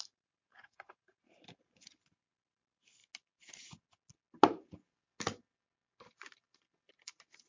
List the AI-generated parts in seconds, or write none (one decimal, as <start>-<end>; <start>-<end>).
0.0-3.0; 6.9-7.5